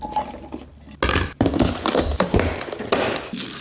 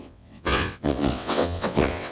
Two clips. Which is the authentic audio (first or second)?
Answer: first